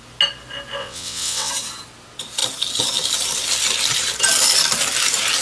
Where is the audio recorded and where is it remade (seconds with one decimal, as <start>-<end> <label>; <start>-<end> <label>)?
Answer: 0.0-0.8 recorded; 0.8-1.5 remade; 1.5-5.4 recorded